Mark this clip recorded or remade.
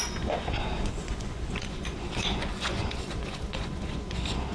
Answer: remade